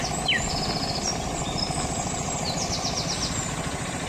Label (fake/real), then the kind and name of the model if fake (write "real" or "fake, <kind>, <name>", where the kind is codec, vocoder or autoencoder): real